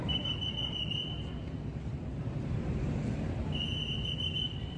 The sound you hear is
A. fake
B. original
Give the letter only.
B